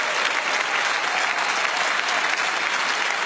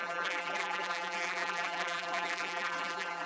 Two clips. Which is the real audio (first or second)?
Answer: first